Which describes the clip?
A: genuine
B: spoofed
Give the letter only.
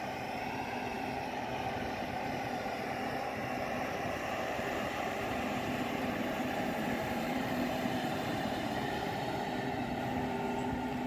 B